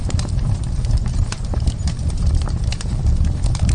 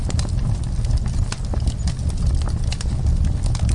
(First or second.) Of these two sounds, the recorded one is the second